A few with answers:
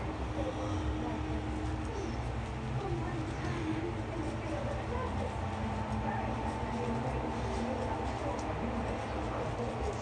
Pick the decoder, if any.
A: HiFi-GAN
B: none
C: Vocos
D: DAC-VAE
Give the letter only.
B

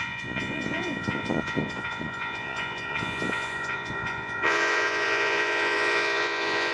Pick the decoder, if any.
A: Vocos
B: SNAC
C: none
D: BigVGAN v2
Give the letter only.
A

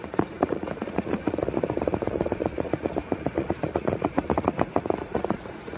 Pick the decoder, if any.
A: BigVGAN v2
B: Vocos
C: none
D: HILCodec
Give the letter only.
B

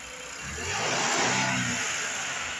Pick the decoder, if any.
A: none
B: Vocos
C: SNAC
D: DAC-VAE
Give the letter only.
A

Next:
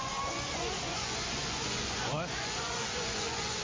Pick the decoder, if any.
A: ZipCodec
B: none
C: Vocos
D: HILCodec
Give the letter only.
C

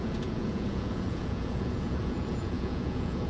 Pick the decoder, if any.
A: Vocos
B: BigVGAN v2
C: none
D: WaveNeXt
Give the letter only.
A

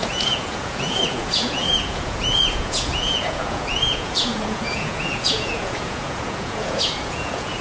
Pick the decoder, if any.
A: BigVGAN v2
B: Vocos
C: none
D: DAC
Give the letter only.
B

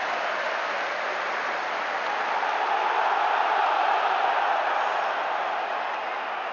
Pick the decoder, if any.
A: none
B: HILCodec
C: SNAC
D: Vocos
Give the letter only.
A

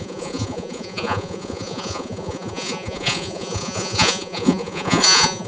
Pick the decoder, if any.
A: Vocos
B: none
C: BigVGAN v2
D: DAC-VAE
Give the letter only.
A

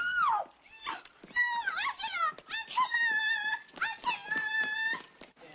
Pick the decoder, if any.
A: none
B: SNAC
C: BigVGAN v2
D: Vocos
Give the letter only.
A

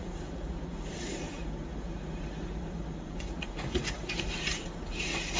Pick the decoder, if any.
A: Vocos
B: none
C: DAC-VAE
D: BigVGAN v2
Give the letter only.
A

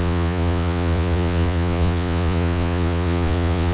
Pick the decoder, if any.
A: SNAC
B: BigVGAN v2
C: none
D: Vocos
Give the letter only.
D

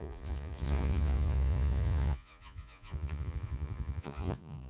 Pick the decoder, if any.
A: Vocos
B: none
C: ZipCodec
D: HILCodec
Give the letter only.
A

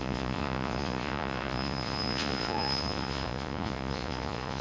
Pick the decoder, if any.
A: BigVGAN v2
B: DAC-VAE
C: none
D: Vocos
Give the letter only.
D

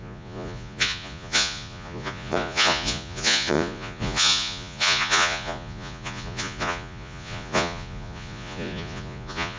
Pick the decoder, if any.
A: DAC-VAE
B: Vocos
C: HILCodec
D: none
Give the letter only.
B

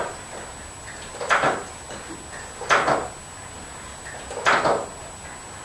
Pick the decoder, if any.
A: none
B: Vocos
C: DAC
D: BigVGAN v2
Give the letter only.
A